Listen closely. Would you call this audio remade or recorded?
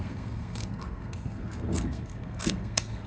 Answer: remade